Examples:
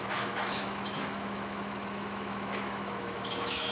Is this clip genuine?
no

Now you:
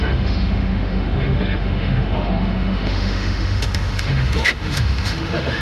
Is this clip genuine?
no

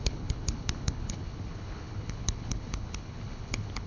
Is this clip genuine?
no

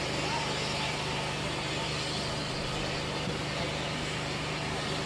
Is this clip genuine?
yes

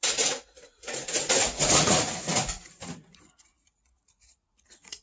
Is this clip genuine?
no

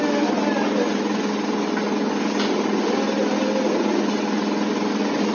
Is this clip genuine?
yes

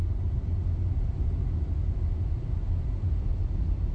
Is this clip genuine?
yes